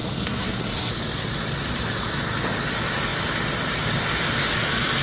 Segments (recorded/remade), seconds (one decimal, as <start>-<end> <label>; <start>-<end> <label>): 0.0-0.9 remade; 0.9-5.0 recorded